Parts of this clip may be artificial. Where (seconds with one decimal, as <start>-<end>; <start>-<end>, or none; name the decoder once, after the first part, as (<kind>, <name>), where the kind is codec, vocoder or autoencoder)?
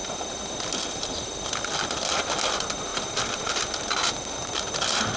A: 2.9-3.5 (vocoder, BigVGAN v2)